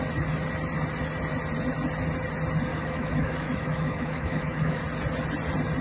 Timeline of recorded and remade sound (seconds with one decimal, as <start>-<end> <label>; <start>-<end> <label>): 0.0-2.7 recorded; 2.7-4.8 remade; 4.8-5.8 recorded